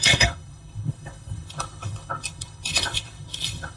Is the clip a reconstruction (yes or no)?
yes